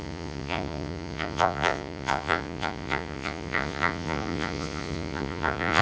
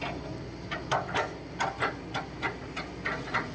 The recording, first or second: second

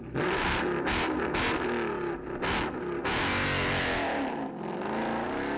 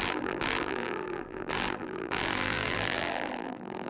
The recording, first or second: first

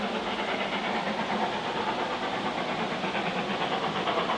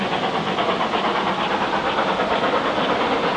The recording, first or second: second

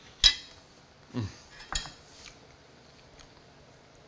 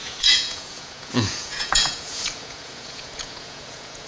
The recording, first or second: first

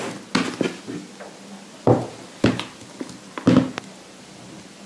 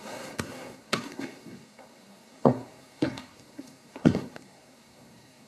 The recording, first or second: first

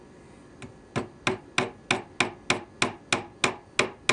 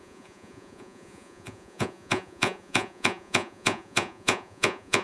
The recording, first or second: first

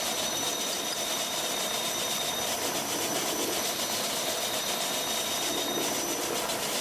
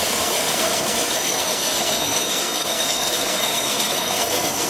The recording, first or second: first